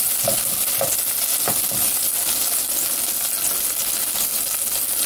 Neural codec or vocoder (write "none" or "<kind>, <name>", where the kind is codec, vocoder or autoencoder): none